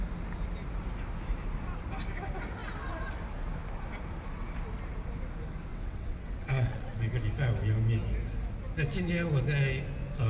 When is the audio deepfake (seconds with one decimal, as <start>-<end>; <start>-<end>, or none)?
5.7-7.0